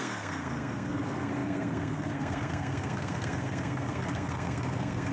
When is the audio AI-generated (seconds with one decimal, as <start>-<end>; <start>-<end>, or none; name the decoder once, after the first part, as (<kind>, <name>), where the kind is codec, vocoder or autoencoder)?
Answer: 0.0-5.1 (codec, SNAC)